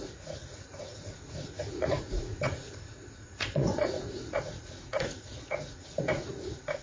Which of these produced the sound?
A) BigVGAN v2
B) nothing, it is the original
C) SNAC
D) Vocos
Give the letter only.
D